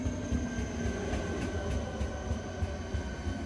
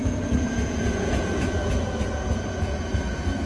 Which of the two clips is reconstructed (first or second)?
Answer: second